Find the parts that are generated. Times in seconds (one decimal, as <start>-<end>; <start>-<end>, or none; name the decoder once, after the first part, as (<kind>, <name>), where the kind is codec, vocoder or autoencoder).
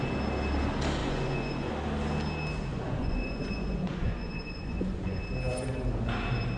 1.0-1.7 (vocoder, Vocos); 2.7-5.2